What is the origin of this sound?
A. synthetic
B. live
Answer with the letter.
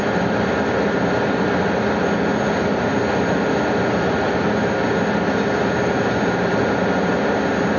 B